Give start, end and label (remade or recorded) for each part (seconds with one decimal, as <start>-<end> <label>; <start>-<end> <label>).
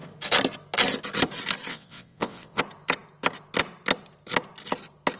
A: 0.0-1.7 recorded; 1.7-2.6 remade; 2.6-5.2 recorded